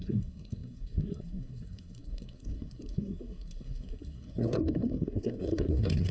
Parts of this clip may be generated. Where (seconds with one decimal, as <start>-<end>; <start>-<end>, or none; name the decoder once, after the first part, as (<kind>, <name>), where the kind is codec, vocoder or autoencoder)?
0.0-6.1 (codec, SNAC)